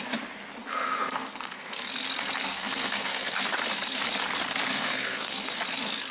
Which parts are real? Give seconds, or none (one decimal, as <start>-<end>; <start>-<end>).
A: 0.0-0.6; 1.9-2.5; 3.4-4.7; 5.4-6.1